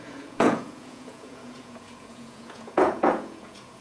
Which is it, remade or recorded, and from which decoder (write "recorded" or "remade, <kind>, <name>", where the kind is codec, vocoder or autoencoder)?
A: remade, vocoder, Vocos